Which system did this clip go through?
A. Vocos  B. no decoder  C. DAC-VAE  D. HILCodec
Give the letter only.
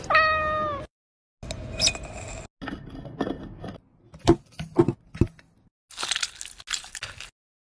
B